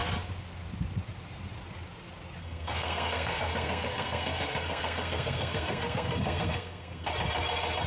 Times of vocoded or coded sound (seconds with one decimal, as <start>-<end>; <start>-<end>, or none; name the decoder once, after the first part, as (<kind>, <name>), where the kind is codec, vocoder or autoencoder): 2.4-7.1 (codec, SNAC)